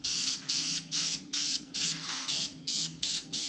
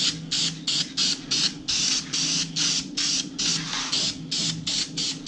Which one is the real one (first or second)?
second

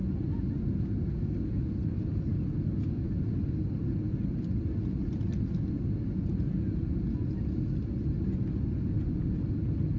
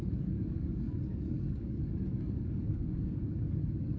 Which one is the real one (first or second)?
first